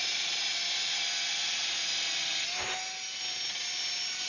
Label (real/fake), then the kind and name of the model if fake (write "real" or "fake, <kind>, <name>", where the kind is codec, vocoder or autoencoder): real